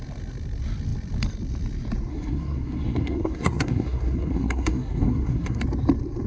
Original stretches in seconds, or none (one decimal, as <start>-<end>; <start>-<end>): 0.0-2.1; 5.6-6.3